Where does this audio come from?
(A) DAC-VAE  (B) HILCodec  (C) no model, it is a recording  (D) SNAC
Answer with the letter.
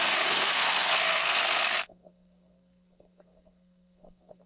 D